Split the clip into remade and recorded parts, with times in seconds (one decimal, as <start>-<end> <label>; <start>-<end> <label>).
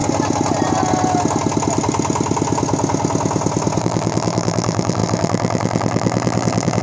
0.0-3.8 recorded; 3.8-6.8 remade